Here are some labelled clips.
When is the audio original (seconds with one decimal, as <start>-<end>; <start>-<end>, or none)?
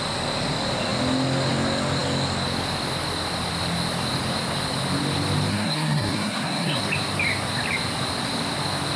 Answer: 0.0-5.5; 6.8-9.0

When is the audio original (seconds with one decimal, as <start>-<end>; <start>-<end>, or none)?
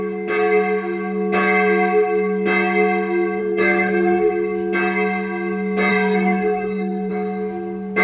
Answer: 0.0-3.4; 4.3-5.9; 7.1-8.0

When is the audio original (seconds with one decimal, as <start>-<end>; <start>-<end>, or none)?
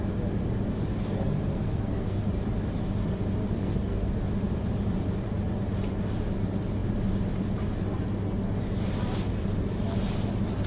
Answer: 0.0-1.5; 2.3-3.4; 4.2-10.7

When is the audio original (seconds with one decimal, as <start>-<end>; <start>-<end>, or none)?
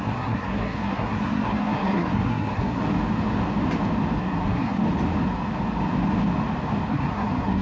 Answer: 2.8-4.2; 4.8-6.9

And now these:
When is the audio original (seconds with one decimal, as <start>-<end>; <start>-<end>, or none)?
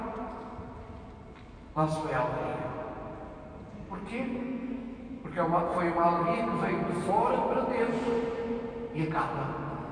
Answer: 0.0-4.4; 5.0-9.9